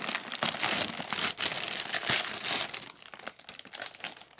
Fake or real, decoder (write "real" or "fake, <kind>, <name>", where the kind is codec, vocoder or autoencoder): real